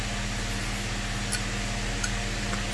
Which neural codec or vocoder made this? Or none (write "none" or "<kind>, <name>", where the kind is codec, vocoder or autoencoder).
none